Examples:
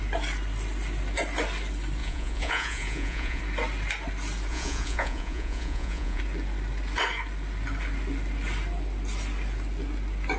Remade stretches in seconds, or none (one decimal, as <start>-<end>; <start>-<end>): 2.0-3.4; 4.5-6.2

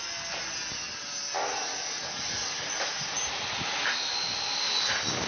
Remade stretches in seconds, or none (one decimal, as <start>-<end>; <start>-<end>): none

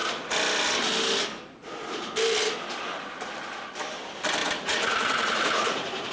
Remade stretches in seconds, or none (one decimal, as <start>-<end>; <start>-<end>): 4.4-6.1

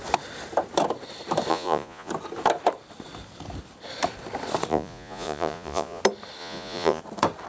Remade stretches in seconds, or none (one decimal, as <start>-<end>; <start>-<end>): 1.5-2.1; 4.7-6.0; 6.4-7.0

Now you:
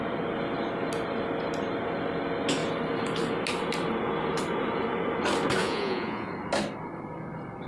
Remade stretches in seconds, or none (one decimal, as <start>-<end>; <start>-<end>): 5.6-6.3

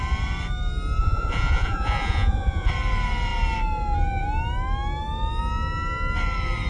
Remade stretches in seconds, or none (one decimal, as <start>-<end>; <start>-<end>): 1.0-2.7

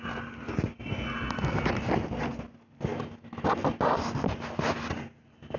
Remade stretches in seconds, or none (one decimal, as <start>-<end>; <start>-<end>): none

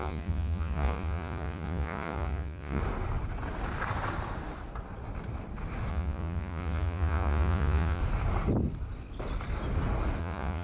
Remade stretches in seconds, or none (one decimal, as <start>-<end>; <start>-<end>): 0.0-2.8; 5.9-8.0; 10.2-10.6